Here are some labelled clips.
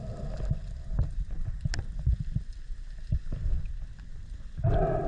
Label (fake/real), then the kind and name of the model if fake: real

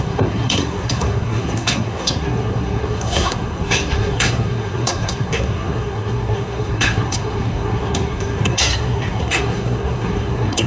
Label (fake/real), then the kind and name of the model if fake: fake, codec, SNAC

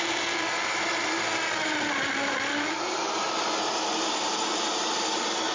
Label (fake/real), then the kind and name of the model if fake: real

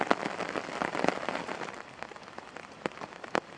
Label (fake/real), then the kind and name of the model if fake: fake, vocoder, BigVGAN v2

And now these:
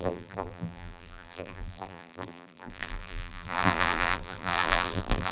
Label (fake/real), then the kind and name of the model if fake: fake, vocoder, BigVGAN v2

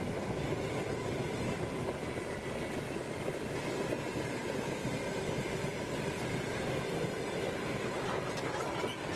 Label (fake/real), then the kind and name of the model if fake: real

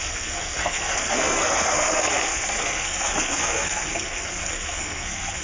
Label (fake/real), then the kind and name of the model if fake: fake, codec, SNAC